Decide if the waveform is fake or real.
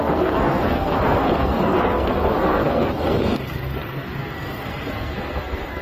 fake